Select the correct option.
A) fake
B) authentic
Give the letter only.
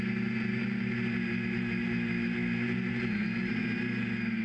B